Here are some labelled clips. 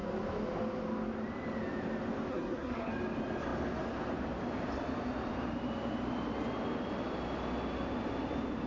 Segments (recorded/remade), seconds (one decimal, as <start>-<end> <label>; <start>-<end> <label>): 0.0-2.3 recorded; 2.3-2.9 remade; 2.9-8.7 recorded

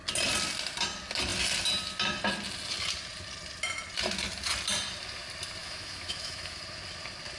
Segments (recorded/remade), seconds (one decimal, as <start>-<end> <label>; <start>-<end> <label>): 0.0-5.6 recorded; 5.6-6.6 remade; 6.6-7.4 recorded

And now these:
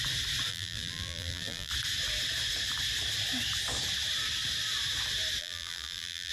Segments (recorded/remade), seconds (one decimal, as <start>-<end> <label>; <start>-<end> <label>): 0.0-0.5 recorded; 0.5-1.7 remade; 1.7-5.4 recorded; 5.4-6.3 remade

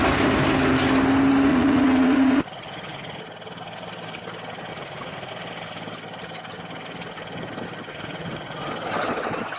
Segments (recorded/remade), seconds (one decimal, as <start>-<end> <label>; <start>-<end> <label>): 0.0-1.5 recorded; 1.5-3.2 remade; 3.2-4.7 recorded; 4.7-5.3 remade; 5.3-7.9 recorded; 7.9-8.7 remade; 8.7-9.6 recorded